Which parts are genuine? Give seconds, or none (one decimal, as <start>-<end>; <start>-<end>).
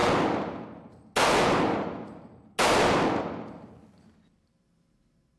0.0-5.4